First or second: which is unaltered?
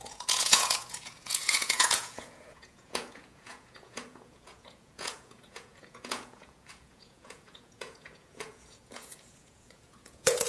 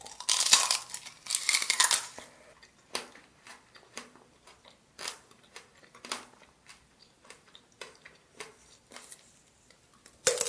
second